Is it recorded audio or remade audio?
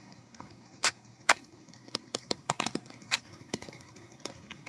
remade